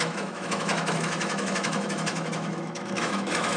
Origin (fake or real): fake